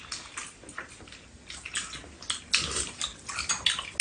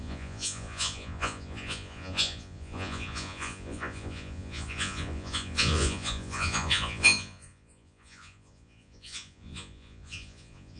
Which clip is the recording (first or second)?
first